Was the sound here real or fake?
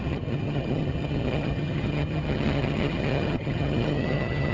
fake